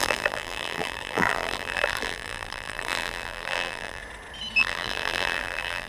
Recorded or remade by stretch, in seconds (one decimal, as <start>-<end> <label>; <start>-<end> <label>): 0.0-4.0 remade; 4.0-4.6 recorded; 4.6-5.9 remade